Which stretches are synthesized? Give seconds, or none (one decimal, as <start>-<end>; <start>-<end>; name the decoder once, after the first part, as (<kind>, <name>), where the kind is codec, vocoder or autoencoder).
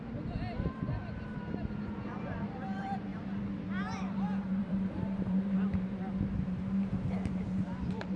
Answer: 0.0-3.1 (vocoder, BigVGAN v2); 3.9-8.2